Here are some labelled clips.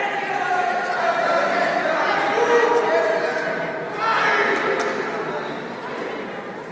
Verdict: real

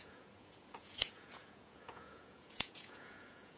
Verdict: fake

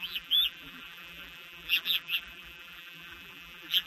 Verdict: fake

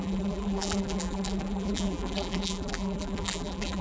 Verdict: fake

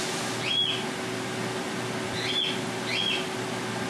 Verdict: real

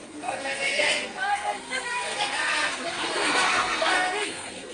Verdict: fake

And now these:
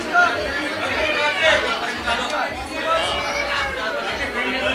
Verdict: real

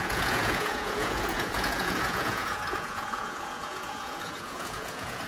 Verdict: fake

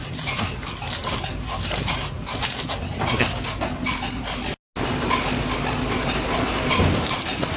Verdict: real